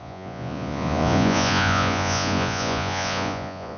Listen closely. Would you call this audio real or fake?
fake